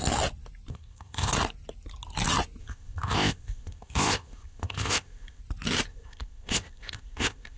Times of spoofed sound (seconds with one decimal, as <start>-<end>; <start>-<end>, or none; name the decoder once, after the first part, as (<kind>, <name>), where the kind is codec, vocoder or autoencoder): 0.7-1.3 (codec, ZipCodec); 2.6-5.4; 5.9-7.6